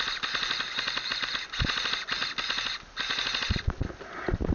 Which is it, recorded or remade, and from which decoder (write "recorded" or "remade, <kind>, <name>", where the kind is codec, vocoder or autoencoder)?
recorded